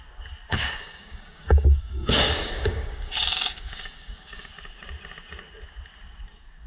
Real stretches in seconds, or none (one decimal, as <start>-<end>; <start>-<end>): 0.0-0.5; 4.5-6.7